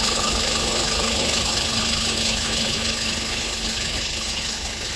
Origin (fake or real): fake